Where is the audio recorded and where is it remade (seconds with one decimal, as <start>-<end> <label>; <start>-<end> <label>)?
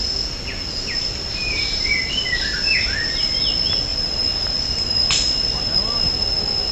0.0-0.8 recorded; 0.8-3.4 remade; 3.4-3.9 recorded; 3.9-6.3 remade; 6.3-6.7 recorded